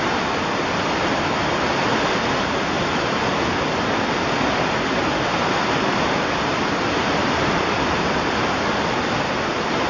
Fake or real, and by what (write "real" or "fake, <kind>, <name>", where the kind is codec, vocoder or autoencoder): real